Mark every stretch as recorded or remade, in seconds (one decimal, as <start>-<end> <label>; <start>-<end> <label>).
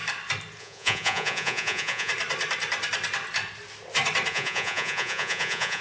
0.0-0.6 recorded; 0.6-2.1 remade; 2.1-4.3 recorded; 4.3-5.8 remade